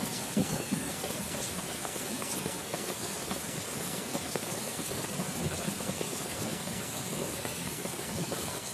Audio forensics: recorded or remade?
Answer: remade